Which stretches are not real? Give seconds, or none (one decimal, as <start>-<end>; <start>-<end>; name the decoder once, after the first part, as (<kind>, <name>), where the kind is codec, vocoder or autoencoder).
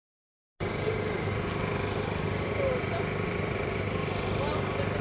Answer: none